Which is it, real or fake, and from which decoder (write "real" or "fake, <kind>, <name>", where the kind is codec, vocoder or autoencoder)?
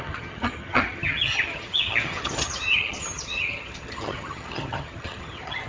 fake, vocoder, HiFi-GAN